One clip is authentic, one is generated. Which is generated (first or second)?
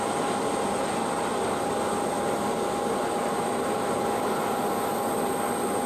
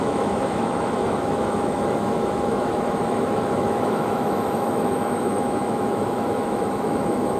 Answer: second